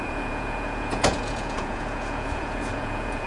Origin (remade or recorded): remade